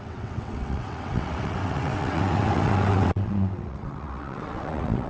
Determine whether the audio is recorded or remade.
remade